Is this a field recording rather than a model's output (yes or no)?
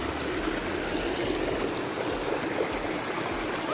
yes